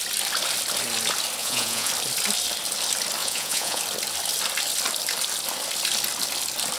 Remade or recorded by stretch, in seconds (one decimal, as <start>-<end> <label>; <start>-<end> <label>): 0.0-1.4 recorded; 1.4-1.9 remade; 1.9-3.2 recorded; 3.2-3.8 remade; 3.8-6.8 recorded